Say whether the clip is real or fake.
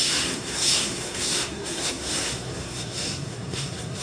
fake